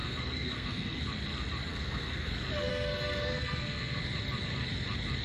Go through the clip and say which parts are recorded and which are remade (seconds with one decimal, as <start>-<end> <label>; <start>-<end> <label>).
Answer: 0.0-1.0 remade; 1.0-1.7 recorded; 1.7-2.3 remade; 2.3-2.7 recorded; 2.7-4.0 remade; 4.0-5.2 recorded